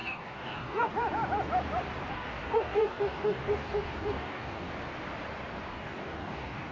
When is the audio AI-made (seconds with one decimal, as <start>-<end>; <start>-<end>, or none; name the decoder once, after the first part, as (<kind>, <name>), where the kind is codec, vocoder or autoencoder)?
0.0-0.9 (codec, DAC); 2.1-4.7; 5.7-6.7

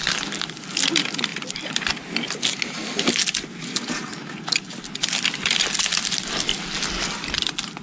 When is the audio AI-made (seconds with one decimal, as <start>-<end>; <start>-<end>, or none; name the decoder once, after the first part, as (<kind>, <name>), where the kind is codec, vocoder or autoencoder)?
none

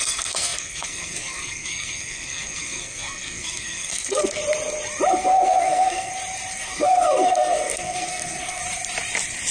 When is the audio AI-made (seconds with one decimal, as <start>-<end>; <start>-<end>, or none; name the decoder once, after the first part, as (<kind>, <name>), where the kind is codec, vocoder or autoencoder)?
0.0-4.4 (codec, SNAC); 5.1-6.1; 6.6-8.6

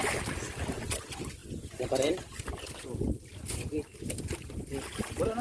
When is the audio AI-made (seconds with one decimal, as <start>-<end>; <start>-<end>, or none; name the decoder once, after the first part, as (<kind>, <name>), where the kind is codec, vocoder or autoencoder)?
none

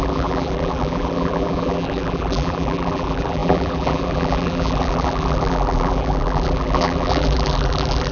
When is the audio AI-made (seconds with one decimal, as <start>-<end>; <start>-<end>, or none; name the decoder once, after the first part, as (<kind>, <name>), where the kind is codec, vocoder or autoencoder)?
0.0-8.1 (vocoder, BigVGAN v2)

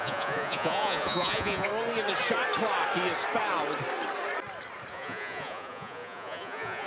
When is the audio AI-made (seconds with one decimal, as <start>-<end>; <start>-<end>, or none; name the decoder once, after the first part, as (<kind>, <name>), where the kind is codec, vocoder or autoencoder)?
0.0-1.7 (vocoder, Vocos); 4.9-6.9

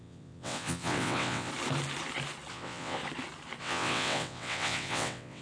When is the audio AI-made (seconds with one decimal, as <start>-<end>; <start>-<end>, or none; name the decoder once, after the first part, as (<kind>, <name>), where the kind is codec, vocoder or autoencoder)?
0.0-1.5 (vocoder, WaveNeXt); 2.5-3.0; 3.6-5.4

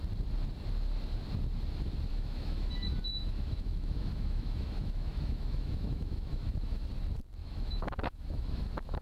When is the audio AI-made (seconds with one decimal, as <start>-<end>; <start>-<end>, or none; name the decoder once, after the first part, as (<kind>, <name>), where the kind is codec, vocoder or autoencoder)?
2.1-2.7 (autoencoder, DAC-VAE); 3.1-6.9; 7.4-9.0